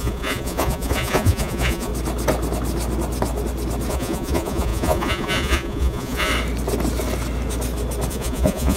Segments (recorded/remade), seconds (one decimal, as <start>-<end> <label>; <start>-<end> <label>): 0.0-1.9 remade; 1.9-3.9 recorded; 3.9-6.3 remade; 6.3-8.1 recorded; 8.1-8.8 remade